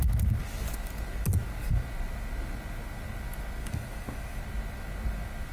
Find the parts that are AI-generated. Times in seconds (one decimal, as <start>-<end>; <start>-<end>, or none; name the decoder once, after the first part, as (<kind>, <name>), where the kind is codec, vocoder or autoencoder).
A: 3.6-4.4 (autoencoder, DAC-VAE)